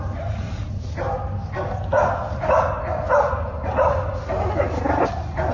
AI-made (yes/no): no